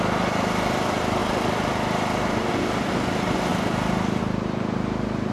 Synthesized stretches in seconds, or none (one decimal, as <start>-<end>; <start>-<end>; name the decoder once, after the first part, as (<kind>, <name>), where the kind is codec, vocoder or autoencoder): 1.2-2.5 (vocoder, BigVGAN v2); 3.5-4.2